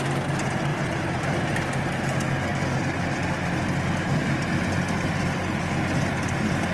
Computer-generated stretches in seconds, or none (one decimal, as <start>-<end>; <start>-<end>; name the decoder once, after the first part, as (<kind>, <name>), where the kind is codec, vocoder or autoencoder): 0.7-1.8 (vocoder, BigVGAN v2); 2.5-5.2